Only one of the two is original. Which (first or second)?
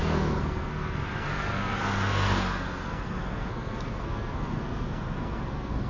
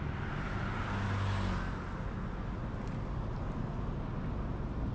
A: second